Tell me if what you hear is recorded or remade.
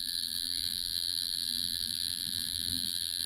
remade